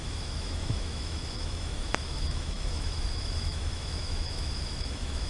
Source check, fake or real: fake